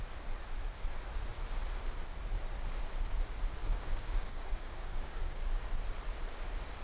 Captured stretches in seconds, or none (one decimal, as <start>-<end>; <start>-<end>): 0.0-3.6; 5.6-6.8